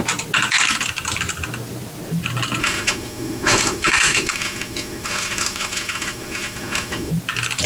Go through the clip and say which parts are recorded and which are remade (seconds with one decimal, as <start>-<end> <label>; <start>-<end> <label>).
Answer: 0.0-2.6 recorded; 2.6-7.1 remade; 7.1-7.7 recorded